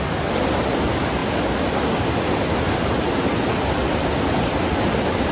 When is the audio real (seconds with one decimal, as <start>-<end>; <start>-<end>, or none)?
0.0-5.3